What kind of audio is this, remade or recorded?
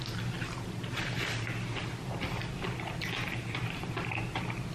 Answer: recorded